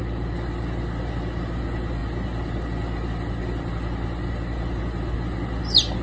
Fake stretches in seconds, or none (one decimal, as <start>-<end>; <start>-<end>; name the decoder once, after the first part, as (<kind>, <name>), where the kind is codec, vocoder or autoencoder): none